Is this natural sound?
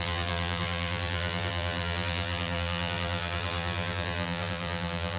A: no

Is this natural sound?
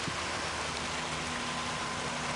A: yes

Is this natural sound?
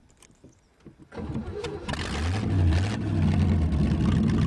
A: yes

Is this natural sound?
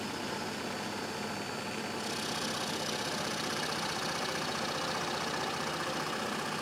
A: yes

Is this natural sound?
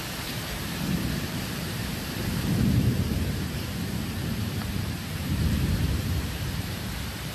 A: no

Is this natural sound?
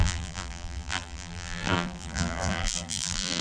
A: no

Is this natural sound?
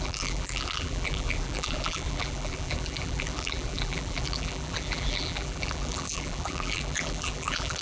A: no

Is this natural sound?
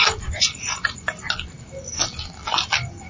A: yes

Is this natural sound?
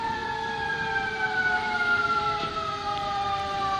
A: no